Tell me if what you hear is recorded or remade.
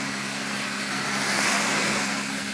remade